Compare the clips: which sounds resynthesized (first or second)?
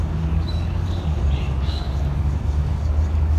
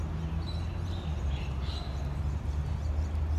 first